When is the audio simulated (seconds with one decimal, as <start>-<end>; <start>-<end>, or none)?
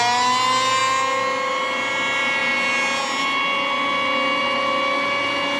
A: none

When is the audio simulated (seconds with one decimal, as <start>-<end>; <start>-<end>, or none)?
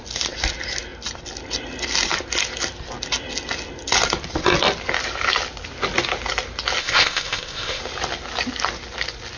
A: 6.8-7.8